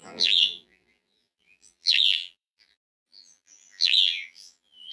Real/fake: fake